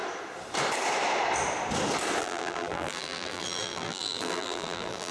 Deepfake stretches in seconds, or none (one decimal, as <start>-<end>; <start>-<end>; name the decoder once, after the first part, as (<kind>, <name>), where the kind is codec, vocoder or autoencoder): 2.2-5.1 (vocoder, BigVGAN v2)